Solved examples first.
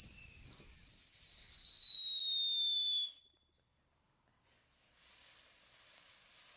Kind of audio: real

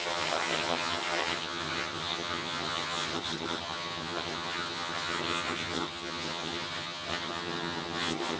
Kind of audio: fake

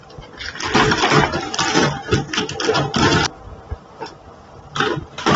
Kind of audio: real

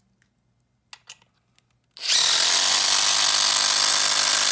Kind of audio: real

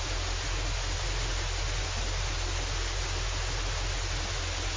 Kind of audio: real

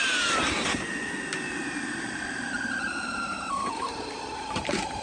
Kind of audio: fake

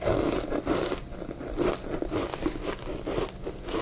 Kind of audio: real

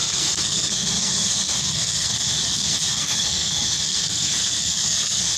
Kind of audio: fake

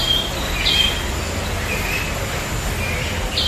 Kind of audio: real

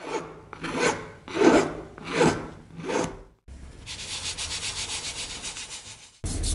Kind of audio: real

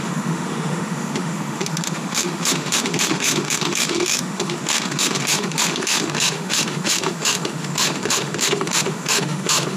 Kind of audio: fake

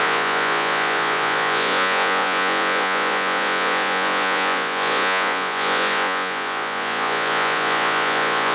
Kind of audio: fake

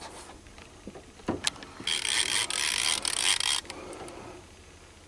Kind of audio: real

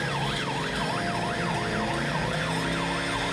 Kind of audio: real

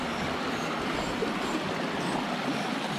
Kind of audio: real